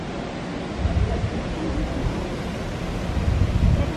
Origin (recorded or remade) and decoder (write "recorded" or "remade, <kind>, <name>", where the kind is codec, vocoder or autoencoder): recorded